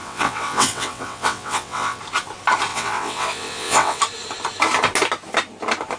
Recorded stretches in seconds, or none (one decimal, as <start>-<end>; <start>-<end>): 2.0-2.7; 4.0-6.0